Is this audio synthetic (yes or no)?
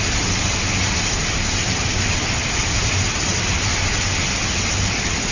no